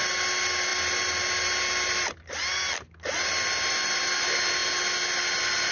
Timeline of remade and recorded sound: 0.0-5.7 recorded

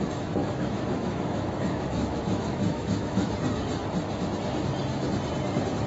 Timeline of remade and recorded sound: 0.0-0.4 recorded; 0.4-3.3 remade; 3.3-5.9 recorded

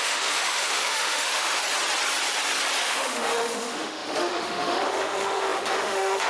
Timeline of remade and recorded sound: 0.0-1.6 remade; 1.6-2.8 recorded; 2.8-6.3 remade

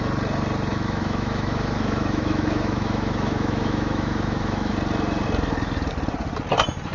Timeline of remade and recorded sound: 0.0-0.7 recorded; 0.7-4.7 remade; 4.7-6.9 recorded

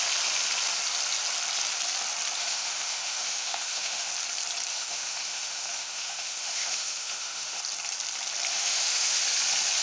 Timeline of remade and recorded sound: 0.0-2.4 recorded; 2.4-4.1 remade; 4.1-4.7 recorded; 4.7-7.6 remade; 7.6-8.5 recorded; 8.5-9.2 remade; 9.2-9.8 recorded

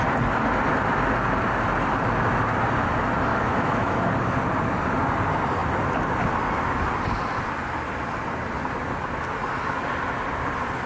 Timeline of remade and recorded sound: 0.0-3.3 recorded; 3.3-4.0 remade; 4.0-10.9 recorded

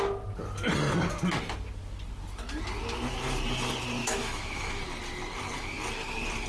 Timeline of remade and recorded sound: 0.0-4.0 recorded; 4.0-4.8 remade; 4.8-6.5 recorded

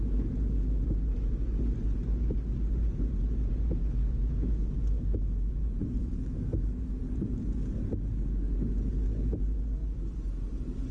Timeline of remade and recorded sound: 0.0-4.0 recorded; 4.0-5.5 remade; 5.5-6.0 recorded; 6.0-7.0 remade; 7.0-10.9 recorded